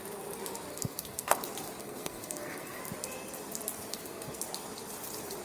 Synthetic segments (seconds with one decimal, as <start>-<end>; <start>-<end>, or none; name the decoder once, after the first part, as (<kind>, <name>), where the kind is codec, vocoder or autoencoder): 0.7-1.4 (codec, SNAC); 1.8-2.8; 3.9-4.4